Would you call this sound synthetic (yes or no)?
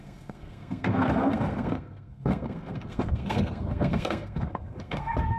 yes